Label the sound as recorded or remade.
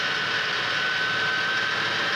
recorded